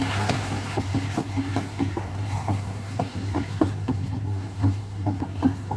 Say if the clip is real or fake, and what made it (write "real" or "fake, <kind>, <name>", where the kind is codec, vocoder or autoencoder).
fake, codec, SNAC